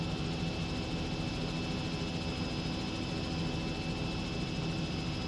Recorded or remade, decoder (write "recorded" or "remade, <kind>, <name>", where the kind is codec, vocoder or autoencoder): recorded